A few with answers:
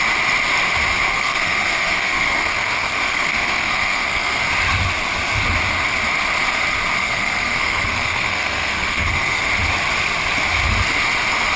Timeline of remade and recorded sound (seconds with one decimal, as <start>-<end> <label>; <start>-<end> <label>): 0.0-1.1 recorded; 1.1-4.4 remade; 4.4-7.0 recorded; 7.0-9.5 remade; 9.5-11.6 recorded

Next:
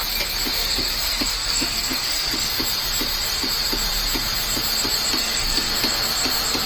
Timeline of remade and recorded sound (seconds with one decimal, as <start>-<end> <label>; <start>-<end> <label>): 0.0-0.6 recorded; 0.6-2.5 remade; 2.5-5.2 recorded; 5.2-5.7 remade; 5.7-6.7 recorded

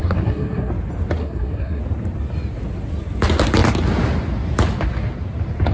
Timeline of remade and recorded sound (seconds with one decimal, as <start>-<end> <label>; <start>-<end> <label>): 0.0-0.7 remade; 0.7-1.2 recorded; 1.2-1.8 remade; 1.8-5.7 recorded